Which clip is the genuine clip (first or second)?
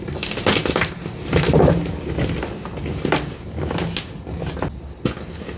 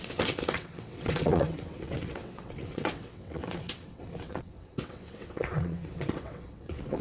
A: first